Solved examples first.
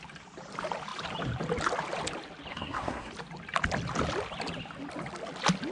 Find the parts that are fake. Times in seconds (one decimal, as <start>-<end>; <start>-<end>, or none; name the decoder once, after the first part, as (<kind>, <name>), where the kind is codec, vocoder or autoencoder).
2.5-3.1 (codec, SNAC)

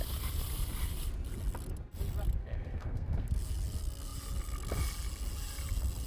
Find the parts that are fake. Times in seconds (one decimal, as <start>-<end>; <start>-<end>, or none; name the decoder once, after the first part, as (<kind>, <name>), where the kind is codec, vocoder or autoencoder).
2.4-3.3 (codec, SNAC)

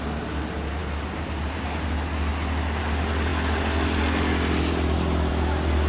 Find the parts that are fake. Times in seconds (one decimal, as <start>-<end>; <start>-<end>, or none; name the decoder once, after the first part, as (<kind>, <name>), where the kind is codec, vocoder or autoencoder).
none